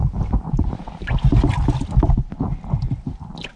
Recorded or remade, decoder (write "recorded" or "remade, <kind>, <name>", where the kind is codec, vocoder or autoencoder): remade, vocoder, BigVGAN v2